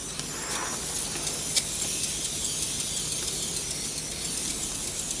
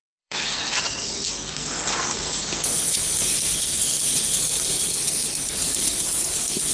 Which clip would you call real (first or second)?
first